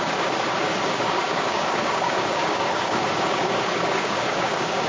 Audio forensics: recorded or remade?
remade